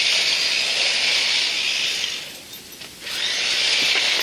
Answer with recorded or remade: recorded